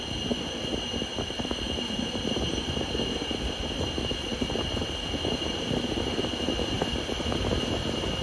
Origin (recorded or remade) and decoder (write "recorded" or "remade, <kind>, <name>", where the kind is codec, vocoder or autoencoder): recorded